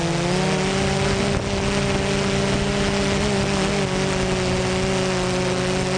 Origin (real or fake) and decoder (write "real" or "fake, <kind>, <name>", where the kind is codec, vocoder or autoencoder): real